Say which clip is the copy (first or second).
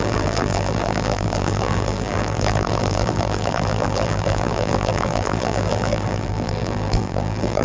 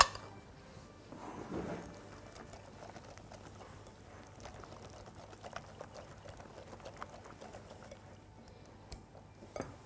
first